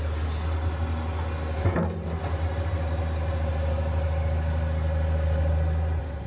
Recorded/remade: recorded